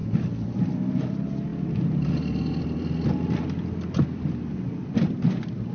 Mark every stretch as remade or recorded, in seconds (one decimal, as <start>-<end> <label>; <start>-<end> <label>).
0.0-1.1 remade; 1.1-1.5 recorded; 1.5-4.9 remade; 4.9-5.7 recorded